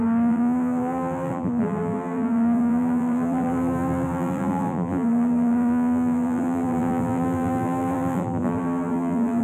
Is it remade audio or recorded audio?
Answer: remade